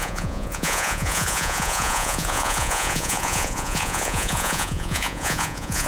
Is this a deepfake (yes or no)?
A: yes